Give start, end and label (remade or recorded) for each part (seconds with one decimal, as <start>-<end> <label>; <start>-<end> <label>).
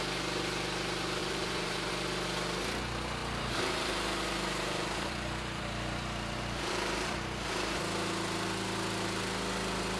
0.0-1.2 recorded; 1.2-1.9 remade; 1.9-3.2 recorded; 3.2-7.8 remade; 7.8-10.0 recorded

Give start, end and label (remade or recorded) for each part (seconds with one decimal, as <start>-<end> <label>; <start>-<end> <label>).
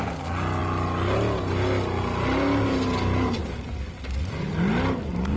0.0-5.4 recorded